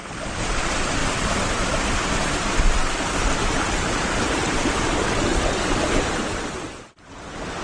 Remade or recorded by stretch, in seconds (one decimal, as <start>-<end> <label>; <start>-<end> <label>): 0.0-0.5 recorded; 0.5-1.0 remade; 1.0-2.4 recorded; 2.4-2.8 remade; 2.8-4.4 recorded; 4.4-5.3 remade; 5.3-6.1 recorded; 6.1-7.6 remade